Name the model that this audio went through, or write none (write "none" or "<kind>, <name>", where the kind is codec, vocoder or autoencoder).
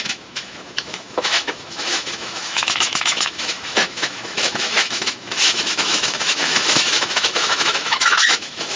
autoencoder, DAC-VAE